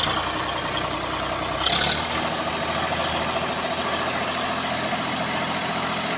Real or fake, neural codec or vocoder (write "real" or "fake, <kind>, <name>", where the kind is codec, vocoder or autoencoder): real